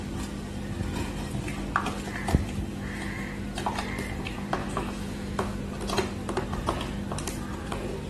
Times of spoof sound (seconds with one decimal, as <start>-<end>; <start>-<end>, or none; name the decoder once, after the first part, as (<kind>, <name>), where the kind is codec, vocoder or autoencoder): 2.7-3.4 (autoencoder, DAC-VAE); 4.6-5.6